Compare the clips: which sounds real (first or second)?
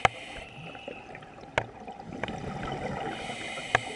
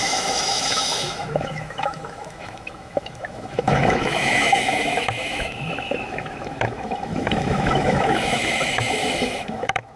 first